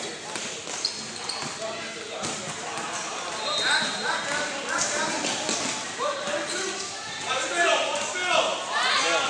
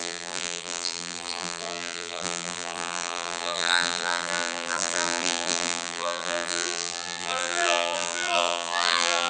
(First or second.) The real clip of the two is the first